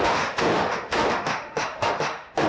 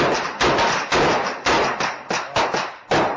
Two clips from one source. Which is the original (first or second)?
second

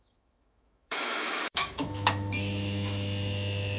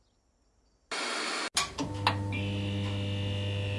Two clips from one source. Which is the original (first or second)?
second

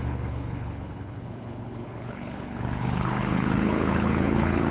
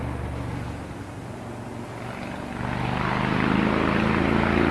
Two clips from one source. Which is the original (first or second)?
second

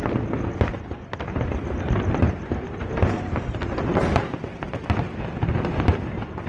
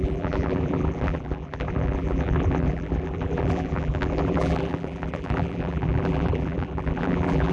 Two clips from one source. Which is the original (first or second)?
first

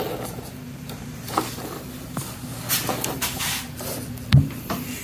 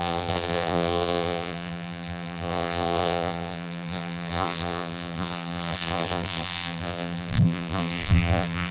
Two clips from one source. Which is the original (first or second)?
first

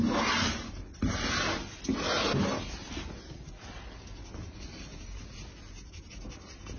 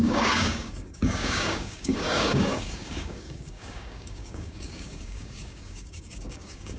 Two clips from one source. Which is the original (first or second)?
first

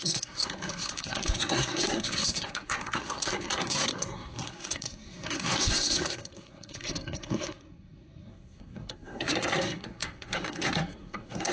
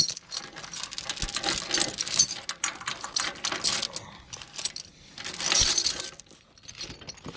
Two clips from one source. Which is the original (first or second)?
second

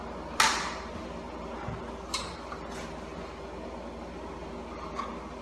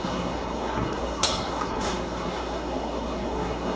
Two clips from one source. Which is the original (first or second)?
first